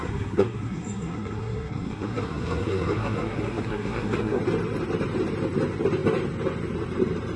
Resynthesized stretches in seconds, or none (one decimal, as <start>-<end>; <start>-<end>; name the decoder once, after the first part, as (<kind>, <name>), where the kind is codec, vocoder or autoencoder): 0.0-4.4 (codec, SNAC)